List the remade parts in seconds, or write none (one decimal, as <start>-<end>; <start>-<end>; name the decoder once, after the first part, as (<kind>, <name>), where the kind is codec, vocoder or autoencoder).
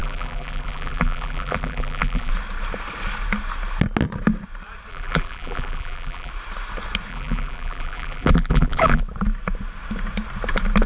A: 0.0-2.3 (vocoder, BigVGAN v2); 4.9-6.3; 7.1-9.0